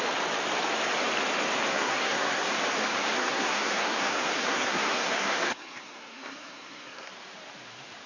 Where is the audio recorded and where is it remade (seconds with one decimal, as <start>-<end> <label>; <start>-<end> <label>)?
0.0-1.7 recorded; 1.7-2.5 remade; 2.5-3.0 recorded; 3.0-7.1 remade; 7.1-8.1 recorded